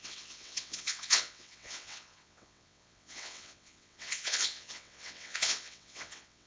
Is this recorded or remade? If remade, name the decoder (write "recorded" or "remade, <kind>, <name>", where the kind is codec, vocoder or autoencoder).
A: remade, vocoder, WaveNeXt